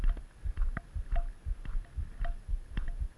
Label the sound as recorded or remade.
recorded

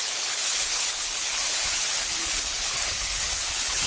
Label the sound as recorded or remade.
remade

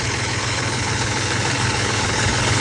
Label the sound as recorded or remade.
remade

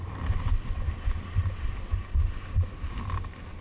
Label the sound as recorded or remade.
recorded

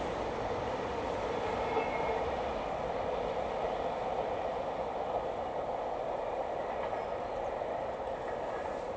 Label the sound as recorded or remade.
recorded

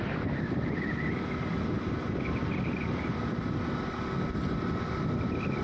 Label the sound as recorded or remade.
recorded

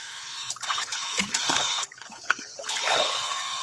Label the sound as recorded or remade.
remade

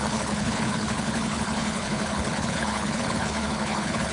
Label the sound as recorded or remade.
remade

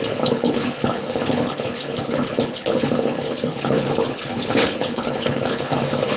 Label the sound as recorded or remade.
remade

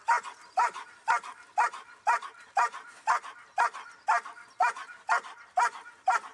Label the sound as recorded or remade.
recorded